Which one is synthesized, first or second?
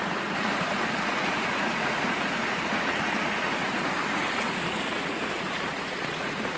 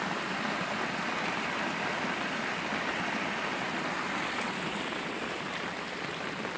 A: first